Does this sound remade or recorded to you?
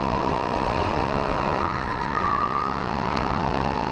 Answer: remade